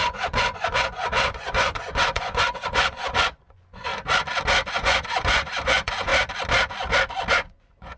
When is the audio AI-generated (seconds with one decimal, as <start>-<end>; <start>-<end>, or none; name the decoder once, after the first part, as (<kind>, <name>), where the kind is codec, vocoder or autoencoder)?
0.0-3.9 (vocoder, Vocos); 4.7-6.1; 7.3-8.0